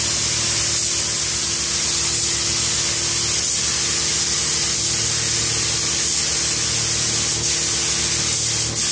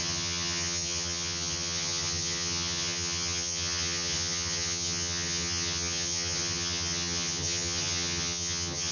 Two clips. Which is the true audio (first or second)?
first